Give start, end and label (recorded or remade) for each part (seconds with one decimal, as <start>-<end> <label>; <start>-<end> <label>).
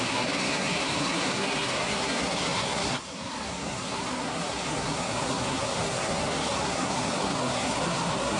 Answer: 0.0-8.4 remade